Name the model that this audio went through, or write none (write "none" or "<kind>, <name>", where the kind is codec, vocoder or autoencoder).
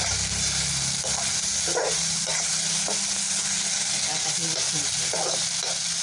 none